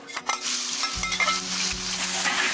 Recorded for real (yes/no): yes